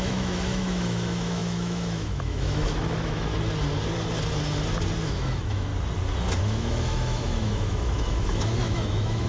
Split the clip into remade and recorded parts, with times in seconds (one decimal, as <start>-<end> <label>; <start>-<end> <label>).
0.0-3.3 remade; 3.3-5.1 recorded; 5.1-5.7 remade; 5.7-6.4 recorded; 6.4-9.3 remade